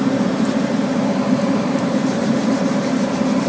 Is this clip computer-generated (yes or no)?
yes